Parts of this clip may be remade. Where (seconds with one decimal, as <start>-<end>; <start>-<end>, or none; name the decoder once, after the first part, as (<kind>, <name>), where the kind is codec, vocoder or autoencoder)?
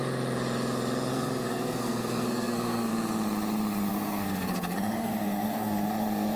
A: 1.1-2.9 (codec, SNAC); 3.9-6.4